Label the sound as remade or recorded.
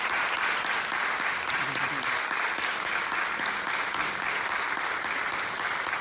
recorded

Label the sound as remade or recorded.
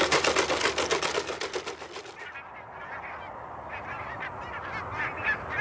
recorded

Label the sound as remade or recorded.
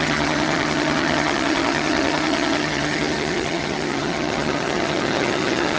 remade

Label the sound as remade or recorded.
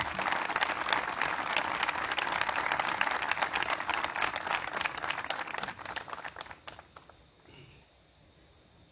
recorded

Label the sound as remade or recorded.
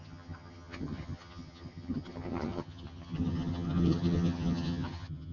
remade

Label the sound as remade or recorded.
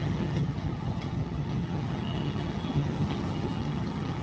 remade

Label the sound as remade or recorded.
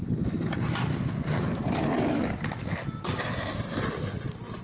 recorded